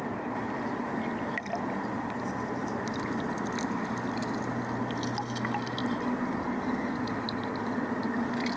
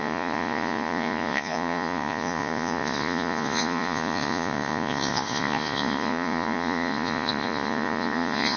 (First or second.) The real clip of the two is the first